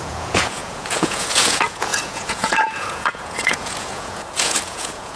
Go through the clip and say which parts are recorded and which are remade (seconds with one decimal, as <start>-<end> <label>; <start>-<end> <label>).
0.0-5.2 remade